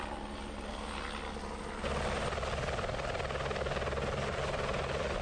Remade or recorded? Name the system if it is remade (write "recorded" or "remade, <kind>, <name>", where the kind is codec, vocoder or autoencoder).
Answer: recorded